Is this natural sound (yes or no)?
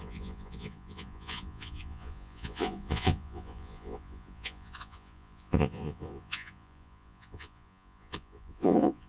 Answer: no